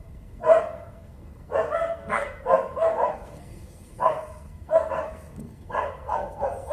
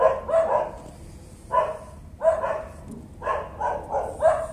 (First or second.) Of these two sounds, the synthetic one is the first